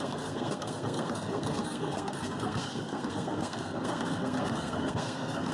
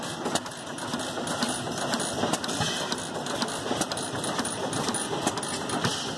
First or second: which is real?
second